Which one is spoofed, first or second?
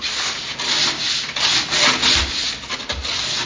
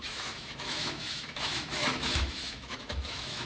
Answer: second